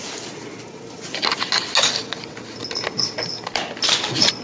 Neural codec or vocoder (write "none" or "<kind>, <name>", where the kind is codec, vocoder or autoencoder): none